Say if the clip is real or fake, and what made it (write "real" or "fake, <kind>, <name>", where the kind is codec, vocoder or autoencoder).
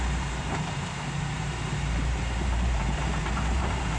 fake, vocoder, BigVGAN v2